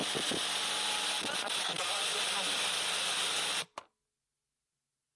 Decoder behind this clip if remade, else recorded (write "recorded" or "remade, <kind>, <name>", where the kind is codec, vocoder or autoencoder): recorded